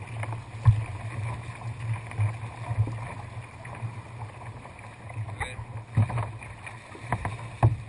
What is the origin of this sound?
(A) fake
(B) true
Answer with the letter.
B